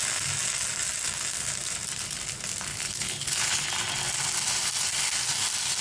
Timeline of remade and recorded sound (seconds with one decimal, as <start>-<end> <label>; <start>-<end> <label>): 0.0-2.7 recorded; 2.7-3.7 remade; 3.7-5.8 recorded